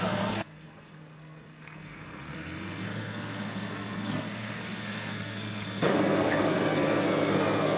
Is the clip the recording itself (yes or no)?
no